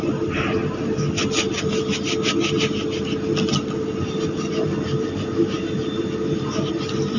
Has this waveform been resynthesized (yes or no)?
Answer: no